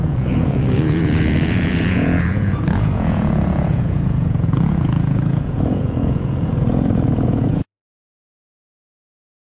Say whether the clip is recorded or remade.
remade